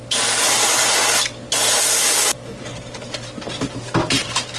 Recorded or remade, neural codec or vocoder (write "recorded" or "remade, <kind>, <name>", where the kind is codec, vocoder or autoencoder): recorded